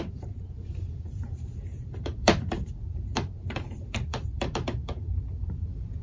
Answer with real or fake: fake